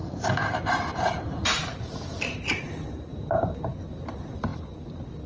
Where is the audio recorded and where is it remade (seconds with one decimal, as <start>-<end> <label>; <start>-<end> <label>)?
0.0-2.6 remade; 2.6-3.1 recorded; 3.1-3.6 remade; 3.6-5.3 recorded